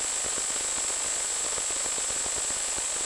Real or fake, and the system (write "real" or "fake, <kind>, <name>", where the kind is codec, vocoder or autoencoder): real